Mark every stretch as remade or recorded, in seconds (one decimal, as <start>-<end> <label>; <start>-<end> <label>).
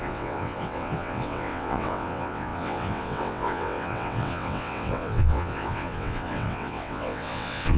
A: 0.0-7.8 remade